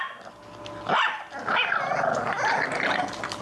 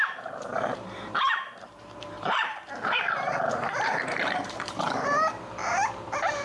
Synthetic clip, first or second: second